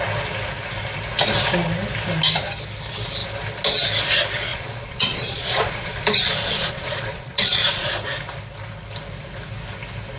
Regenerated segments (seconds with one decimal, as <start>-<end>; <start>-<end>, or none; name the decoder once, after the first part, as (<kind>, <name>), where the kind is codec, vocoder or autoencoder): 4.5-7.9 (vocoder, Vocos)